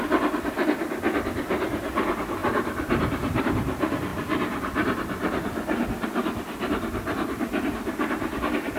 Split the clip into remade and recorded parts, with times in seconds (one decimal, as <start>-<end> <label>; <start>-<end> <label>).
0.0-2.4 recorded; 2.4-3.4 remade; 3.4-4.1 recorded; 4.1-8.4 remade; 8.4-8.8 recorded